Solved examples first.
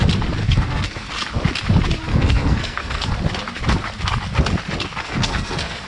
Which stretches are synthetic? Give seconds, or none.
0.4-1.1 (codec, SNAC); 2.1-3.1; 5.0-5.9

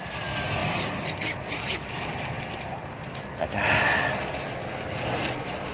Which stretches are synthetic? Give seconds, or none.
none

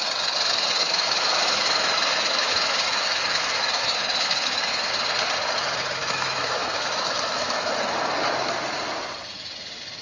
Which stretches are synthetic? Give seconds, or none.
0.8-4.8 (autoencoder, DAC-VAE); 6.0-7.7